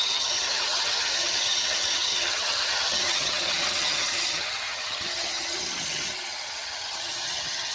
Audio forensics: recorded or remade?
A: remade